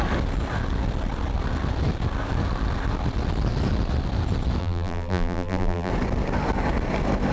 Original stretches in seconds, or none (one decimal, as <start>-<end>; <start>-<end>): 0.0-4.6; 5.9-7.3